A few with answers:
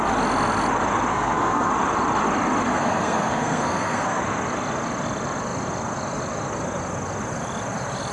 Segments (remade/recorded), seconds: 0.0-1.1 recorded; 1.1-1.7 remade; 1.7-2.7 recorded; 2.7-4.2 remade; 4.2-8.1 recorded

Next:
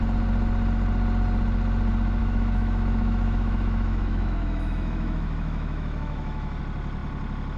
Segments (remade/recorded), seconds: 0.0-2.2 recorded; 2.2-6.6 remade; 6.6-7.6 recorded

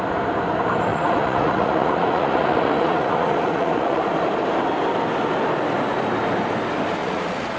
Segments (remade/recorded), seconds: 0.0-0.9 recorded; 0.9-4.0 remade; 4.0-7.0 recorded; 7.0-7.6 remade

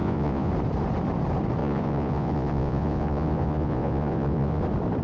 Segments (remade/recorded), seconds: 0.0-0.5 remade; 0.5-1.6 recorded; 1.6-4.6 remade; 4.6-5.0 recorded

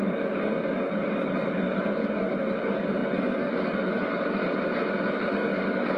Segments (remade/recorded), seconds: 0.0-4.4 remade; 4.4-5.0 recorded; 5.0-6.0 remade

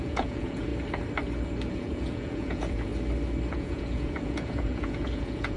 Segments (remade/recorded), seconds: 0.0-0.7 remade; 0.7-1.7 recorded; 1.7-2.9 remade; 2.9-3.5 recorded; 3.5-5.6 remade

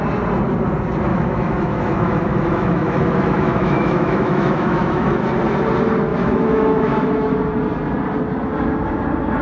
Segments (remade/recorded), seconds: 0.0-1.1 recorded; 1.1-5.2 remade; 5.2-6.1 recorded; 6.1-7.3 remade; 7.3-9.4 recorded

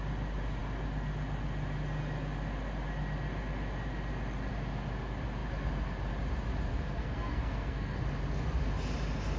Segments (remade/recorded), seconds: 0.0-6.7 recorded; 6.7-8.0 remade; 8.0-9.4 recorded